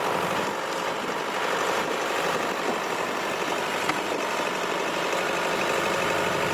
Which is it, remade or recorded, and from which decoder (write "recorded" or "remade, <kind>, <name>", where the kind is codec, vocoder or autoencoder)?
remade, vocoder, BigVGAN v2